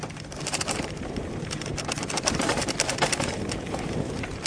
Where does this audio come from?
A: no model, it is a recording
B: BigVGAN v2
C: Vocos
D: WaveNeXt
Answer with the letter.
B